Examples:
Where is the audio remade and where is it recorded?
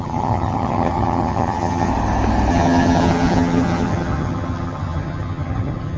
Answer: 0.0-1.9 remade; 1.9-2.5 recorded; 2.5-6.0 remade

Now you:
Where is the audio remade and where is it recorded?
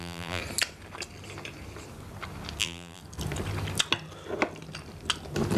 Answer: 0.0-0.4 remade; 0.4-2.6 recorded; 2.6-3.0 remade; 3.0-5.6 recorded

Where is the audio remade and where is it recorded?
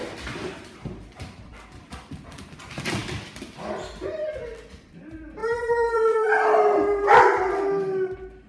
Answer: 0.0-1.9 remade; 1.9-5.4 recorded; 5.4-6.3 remade; 6.3-8.5 recorded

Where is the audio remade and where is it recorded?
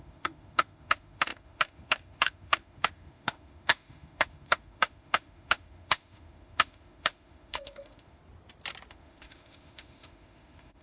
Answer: 0.0-8.2 remade; 8.2-8.9 recorded; 8.9-10.8 remade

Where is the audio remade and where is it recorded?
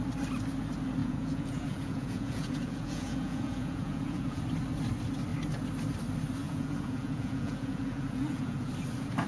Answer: 0.0-1.0 recorded; 1.0-4.4 remade; 4.4-6.4 recorded; 6.4-8.7 remade; 8.7-9.3 recorded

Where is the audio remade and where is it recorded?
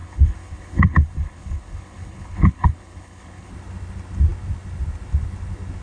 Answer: 0.0-3.5 remade; 3.5-5.8 recorded